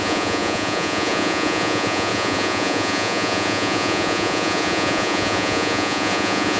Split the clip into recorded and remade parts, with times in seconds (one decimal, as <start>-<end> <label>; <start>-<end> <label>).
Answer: 0.0-6.6 remade